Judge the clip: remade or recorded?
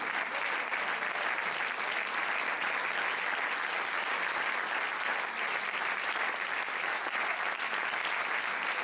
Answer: recorded